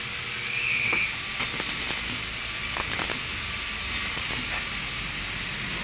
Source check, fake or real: real